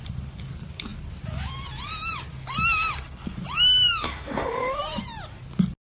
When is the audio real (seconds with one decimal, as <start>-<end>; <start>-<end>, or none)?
0.0-4.0; 4.8-6.0